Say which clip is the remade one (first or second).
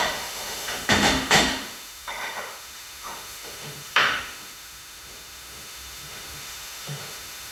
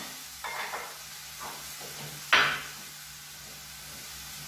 first